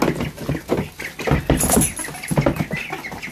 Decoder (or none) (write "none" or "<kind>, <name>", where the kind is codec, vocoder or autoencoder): none